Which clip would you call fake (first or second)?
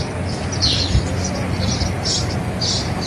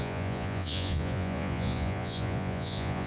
second